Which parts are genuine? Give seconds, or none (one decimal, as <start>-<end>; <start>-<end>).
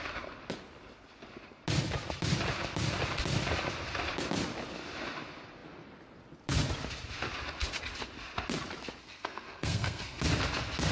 0.0-9.0; 10.2-10.9